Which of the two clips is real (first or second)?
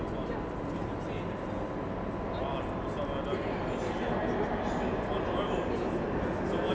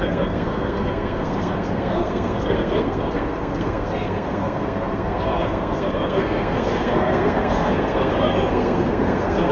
first